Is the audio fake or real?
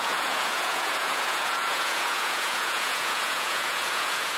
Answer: fake